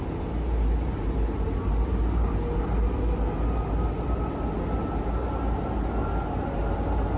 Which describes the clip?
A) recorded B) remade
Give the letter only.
A